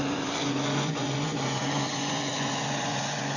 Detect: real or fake fake